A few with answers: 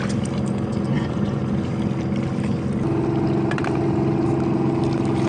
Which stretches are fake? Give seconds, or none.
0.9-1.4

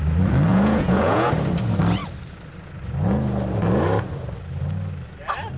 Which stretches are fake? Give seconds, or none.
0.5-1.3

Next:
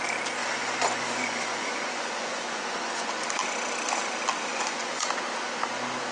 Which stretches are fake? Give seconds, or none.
0.4-3.1; 4.5-5.1

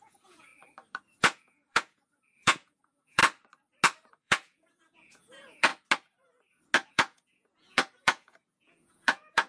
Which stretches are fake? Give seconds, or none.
0.0-0.5; 1.2-3.2; 4.1-5.7; 6.9-9.5